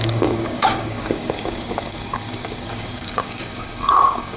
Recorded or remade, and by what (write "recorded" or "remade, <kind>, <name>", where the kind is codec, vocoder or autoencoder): remade, codec, DAC